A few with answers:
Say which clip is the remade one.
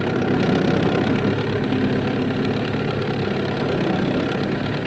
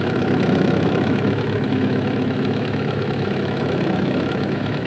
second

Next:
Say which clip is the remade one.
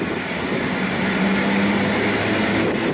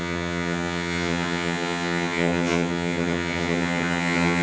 second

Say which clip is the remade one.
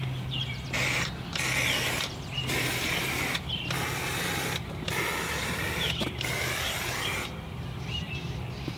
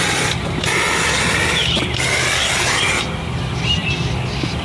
first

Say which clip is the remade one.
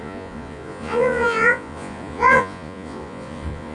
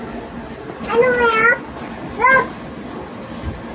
first